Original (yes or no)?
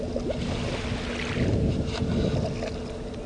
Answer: yes